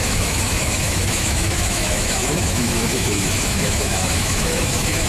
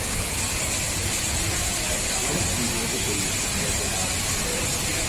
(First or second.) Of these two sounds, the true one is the second